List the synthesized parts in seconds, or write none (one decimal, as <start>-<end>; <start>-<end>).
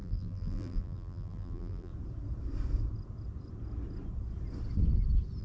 0.0-1.9